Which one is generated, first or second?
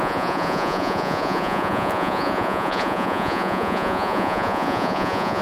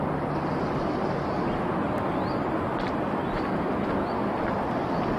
first